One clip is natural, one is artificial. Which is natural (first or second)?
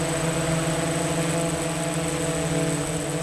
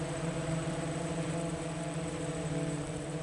first